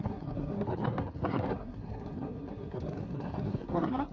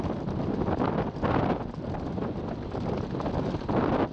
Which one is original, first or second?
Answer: second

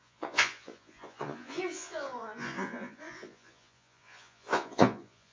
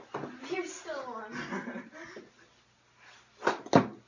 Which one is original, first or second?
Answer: second